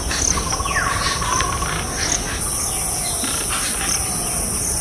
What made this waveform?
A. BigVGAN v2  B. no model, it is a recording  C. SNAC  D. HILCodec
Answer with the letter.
A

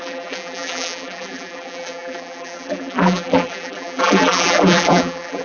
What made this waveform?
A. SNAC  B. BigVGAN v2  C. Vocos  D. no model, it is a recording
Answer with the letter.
B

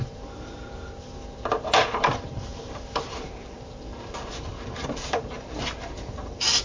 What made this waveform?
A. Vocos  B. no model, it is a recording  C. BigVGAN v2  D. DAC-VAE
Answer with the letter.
C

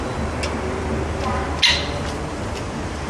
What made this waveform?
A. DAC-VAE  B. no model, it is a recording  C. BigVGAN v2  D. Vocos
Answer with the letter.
B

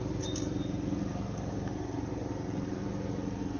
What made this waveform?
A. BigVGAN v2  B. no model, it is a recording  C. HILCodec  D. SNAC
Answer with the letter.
B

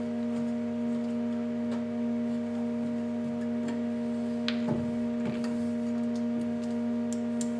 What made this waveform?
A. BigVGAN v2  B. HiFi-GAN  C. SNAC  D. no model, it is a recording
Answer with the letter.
D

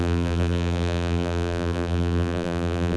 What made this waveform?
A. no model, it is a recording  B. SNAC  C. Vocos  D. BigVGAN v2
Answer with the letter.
D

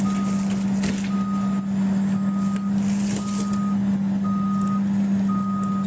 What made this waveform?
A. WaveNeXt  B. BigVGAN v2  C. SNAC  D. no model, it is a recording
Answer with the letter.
D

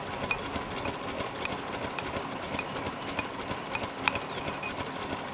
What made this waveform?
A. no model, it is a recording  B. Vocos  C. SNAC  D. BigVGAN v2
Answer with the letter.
A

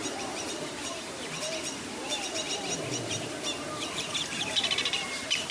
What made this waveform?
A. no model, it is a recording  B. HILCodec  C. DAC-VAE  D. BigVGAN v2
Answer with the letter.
D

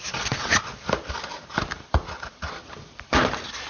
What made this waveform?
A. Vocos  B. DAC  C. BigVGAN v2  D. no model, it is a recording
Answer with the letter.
C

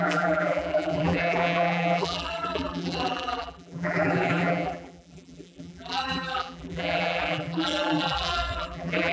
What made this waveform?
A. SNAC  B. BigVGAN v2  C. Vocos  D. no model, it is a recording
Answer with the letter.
B